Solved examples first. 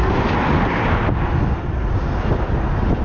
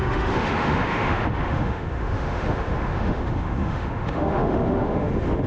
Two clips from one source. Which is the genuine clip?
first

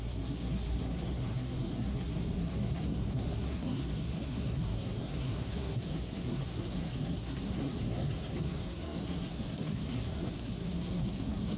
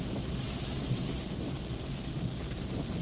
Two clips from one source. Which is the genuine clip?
second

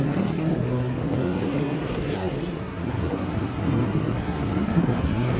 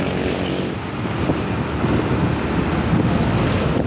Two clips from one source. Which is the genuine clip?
second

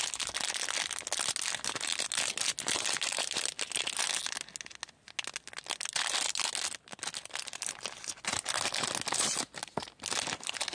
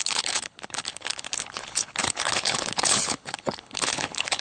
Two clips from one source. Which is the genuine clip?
first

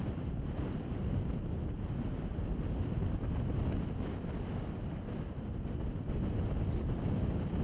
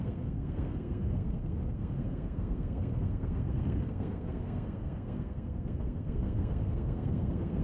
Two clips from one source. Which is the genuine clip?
first